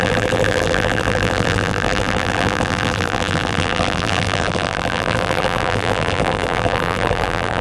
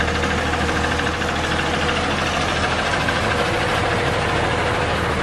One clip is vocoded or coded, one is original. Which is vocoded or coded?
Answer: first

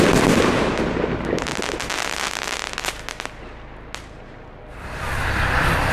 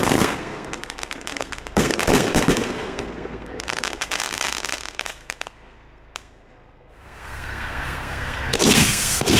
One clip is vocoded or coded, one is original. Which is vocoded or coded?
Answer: second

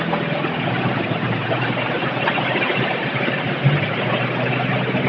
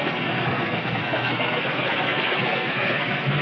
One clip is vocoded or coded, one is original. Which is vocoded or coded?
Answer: second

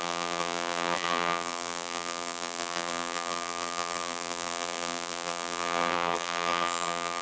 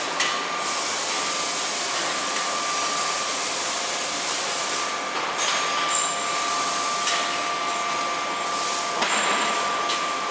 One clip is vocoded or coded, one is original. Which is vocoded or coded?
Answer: first